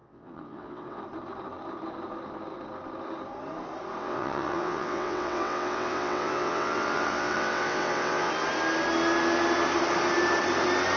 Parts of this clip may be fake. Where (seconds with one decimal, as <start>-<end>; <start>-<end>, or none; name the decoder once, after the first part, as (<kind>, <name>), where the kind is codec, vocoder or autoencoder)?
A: 0.0-1.0 (vocoder, WaveNeXt); 4.0-8.3